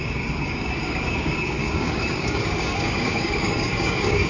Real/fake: fake